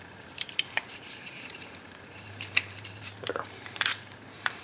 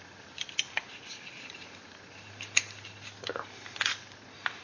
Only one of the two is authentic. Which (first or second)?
second